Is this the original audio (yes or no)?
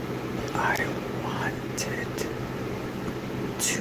yes